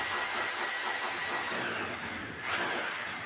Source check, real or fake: real